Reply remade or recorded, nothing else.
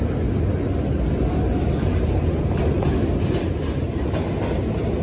recorded